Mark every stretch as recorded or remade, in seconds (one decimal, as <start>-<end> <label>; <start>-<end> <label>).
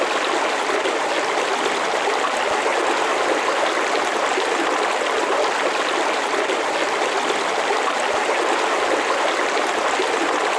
0.0-10.6 recorded